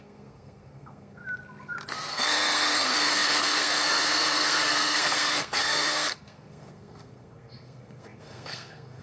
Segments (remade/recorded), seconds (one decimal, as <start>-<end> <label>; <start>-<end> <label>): 0.0-1.2 remade; 1.2-2.1 recorded; 2.1-9.0 remade